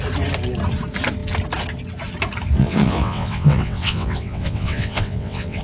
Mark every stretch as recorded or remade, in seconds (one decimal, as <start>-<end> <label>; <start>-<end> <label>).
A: 0.0-2.6 recorded; 2.6-5.6 remade